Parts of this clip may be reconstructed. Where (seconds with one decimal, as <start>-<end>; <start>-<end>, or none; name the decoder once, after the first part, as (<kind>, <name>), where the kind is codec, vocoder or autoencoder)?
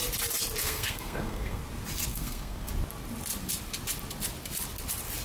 0.6-1.6 (codec, SNAC); 2.1-2.7